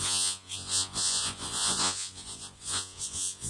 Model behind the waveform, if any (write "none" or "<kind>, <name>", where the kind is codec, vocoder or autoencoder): vocoder, Vocos